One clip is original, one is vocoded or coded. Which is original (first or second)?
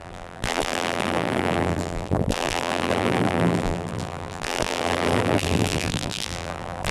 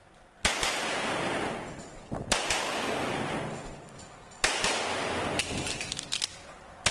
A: second